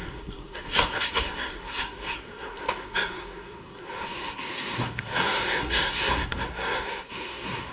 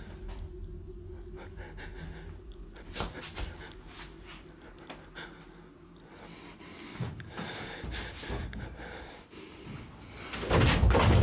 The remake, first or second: first